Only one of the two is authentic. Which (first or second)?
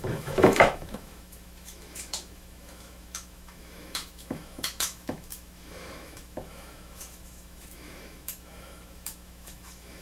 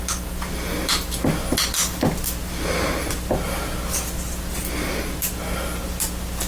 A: second